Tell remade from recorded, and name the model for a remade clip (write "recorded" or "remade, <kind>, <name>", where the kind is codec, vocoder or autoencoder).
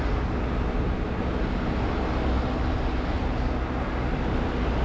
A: recorded